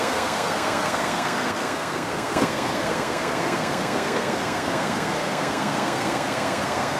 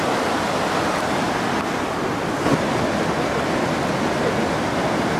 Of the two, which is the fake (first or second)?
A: first